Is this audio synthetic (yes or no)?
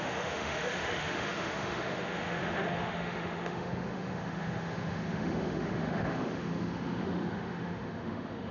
yes